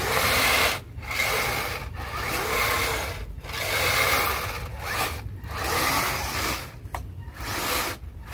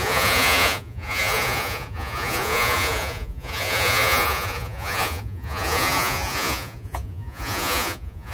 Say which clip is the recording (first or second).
first